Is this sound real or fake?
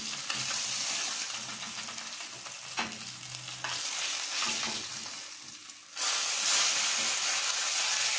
real